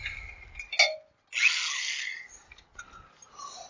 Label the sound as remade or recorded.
recorded